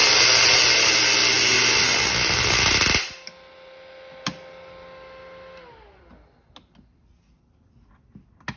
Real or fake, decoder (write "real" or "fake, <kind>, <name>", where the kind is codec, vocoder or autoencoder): real